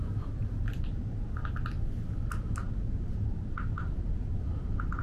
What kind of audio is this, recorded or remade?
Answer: recorded